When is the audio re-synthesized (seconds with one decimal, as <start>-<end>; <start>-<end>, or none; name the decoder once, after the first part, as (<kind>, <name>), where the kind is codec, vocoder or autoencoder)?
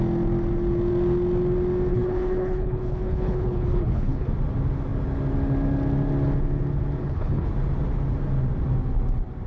1.9-4.3 (codec, HILCodec); 7.0-7.5